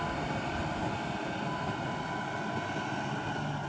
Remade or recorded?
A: recorded